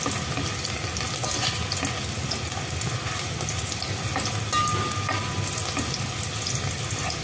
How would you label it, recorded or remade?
recorded